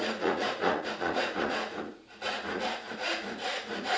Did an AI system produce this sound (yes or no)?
yes